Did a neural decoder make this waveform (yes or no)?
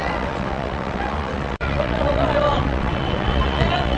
yes